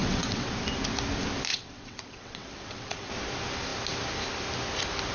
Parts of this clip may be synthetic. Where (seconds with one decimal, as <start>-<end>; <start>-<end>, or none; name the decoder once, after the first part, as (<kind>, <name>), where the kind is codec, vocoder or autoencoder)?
0.0-0.5 (vocoder, WaveNeXt); 1.5-3.1